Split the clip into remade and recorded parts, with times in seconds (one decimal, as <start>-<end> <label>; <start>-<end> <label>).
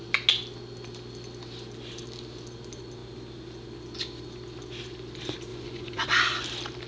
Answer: 0.0-5.5 recorded; 5.5-6.2 remade; 6.2-6.9 recorded